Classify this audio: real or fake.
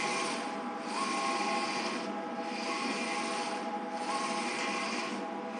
real